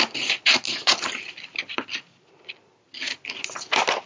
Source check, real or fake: real